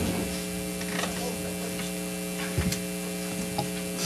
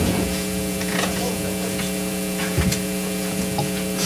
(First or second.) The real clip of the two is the first